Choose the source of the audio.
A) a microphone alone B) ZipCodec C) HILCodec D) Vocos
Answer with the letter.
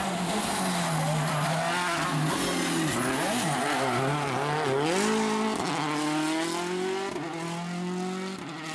A